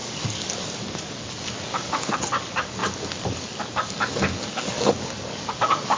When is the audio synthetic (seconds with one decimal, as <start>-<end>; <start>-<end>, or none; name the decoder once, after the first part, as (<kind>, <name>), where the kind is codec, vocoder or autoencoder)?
0.0-6.0 (codec, DAC)